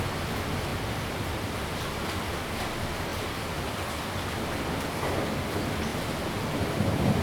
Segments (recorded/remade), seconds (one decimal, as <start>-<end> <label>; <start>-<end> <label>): 0.0-0.7 recorded; 0.7-1.7 remade; 1.7-3.1 recorded; 3.1-3.9 remade; 3.9-5.9 recorded; 5.9-6.6 remade; 6.6-7.2 recorded